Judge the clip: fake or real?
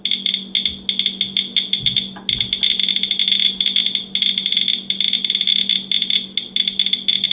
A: real